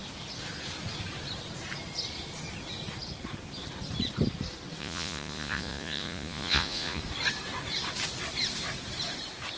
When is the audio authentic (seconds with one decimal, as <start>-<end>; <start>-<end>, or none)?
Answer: 0.0-4.8; 7.0-9.6